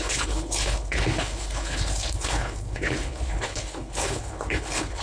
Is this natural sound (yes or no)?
no